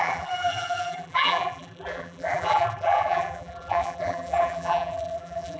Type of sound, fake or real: fake